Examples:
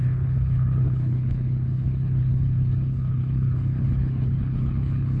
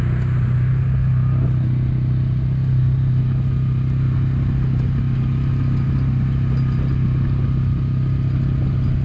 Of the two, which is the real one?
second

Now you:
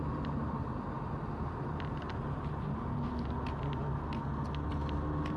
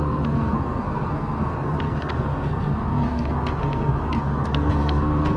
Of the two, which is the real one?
first